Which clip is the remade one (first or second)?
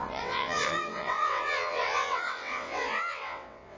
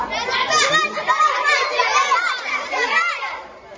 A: first